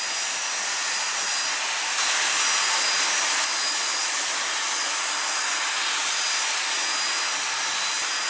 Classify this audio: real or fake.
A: real